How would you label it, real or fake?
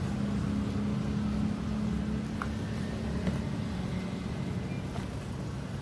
real